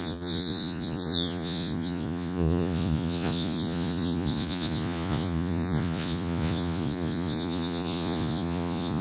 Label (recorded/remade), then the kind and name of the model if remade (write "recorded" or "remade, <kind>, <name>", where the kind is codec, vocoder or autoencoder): remade, vocoder, Vocos